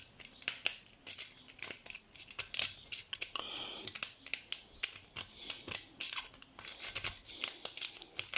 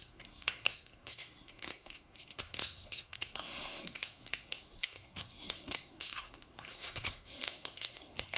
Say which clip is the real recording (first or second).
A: first